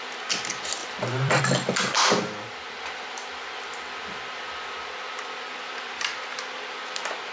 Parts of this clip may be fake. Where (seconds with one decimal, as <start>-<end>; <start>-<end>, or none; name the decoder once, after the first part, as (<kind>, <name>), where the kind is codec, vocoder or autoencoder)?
0.8-1.4 (vocoder, BigVGAN v2)